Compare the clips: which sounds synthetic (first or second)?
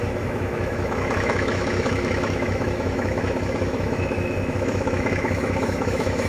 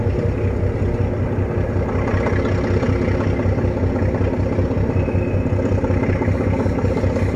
first